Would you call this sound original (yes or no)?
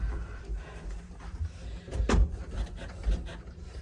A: no